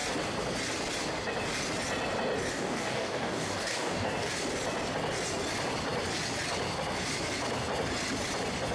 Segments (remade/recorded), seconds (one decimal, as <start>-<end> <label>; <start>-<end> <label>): 0.0-2.5 recorded; 2.5-4.3 remade; 4.3-8.7 recorded